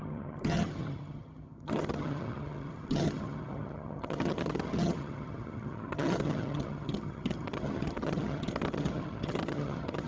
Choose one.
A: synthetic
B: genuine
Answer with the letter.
A